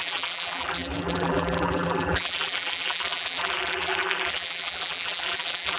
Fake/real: fake